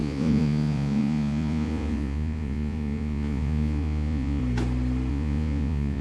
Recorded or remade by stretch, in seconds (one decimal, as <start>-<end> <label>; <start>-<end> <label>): 0.0-4.4 remade; 4.4-5.1 recorded; 5.1-6.0 remade